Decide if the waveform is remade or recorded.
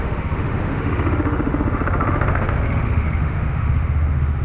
remade